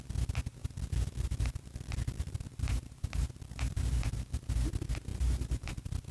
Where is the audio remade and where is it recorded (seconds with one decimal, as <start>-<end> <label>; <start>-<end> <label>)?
0.0-0.6 recorded; 0.6-4.3 remade; 4.3-5.1 recorded; 5.1-6.1 remade